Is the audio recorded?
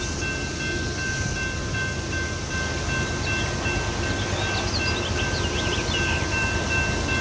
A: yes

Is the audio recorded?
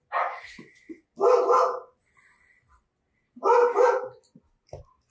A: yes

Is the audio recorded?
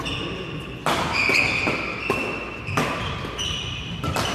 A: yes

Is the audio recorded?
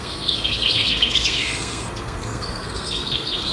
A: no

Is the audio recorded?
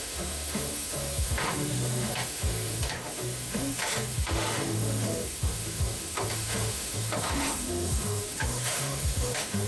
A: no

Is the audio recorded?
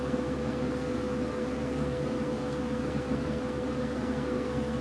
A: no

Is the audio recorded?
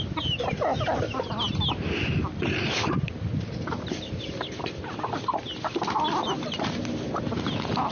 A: yes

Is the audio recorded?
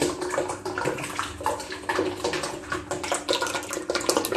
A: yes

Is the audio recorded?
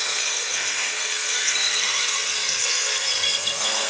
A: no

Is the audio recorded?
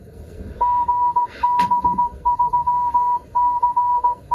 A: no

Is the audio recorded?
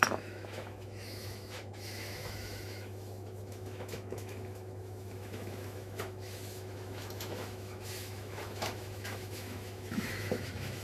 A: no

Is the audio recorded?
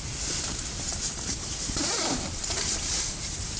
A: no